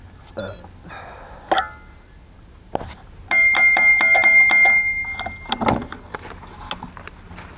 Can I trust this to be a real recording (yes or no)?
yes